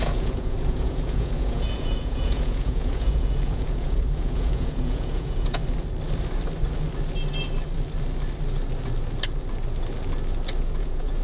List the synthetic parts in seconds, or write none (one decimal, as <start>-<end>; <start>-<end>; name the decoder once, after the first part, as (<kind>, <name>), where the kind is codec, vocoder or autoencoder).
0.0-5.6 (vocoder, Vocos); 10.6-11.2